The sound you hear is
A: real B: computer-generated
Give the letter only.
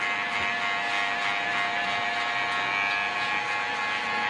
A